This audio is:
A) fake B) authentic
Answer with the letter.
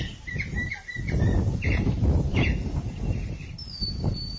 A